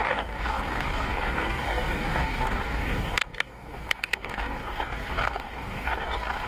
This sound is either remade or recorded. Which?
remade